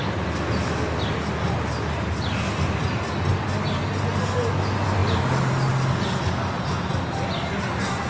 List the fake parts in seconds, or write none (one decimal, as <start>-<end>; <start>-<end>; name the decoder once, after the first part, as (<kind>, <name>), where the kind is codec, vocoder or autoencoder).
none